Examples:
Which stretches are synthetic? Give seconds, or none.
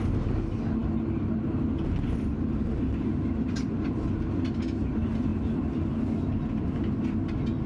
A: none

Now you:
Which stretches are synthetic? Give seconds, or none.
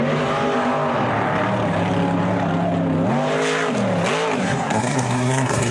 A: 4.4-5.7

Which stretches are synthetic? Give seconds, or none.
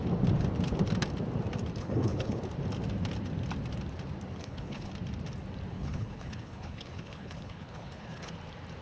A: 1.8-2.4; 4.4-4.9; 5.7-8.3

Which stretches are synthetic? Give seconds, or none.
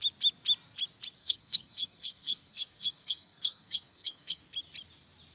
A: 1.2-4.4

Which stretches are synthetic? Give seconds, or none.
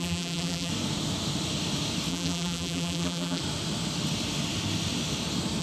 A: 0.0-0.7; 2.1-3.4